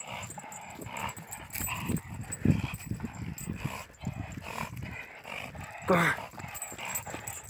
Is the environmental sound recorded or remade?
recorded